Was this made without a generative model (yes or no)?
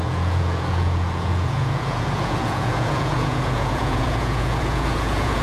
no